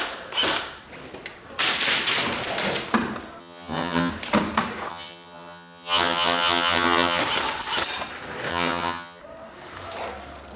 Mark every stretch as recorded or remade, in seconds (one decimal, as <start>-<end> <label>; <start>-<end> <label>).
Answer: 0.0-3.4 recorded; 3.4-4.1 remade; 4.1-4.9 recorded; 4.9-7.2 remade; 7.2-8.5 recorded; 8.5-9.2 remade; 9.2-10.6 recorded